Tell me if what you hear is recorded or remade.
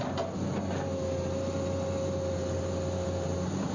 recorded